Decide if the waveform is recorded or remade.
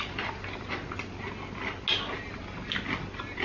recorded